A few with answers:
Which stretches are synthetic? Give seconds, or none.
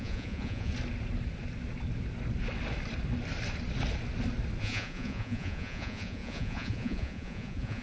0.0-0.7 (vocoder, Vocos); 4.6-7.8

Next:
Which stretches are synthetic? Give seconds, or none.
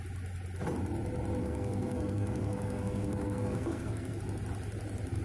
1.4-4.2 (codec, SNAC)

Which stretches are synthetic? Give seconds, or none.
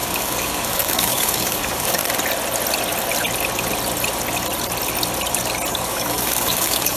0.0-2.0 (codec, DAC); 5.7-7.0